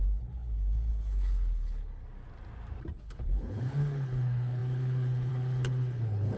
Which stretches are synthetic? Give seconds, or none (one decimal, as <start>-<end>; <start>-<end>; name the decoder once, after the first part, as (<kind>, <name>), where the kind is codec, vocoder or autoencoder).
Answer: 0.0-2.0 (codec, HILCodec); 3.0-6.4